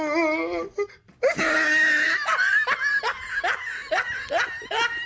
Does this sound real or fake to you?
real